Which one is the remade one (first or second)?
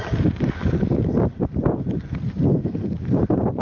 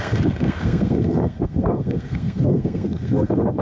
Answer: second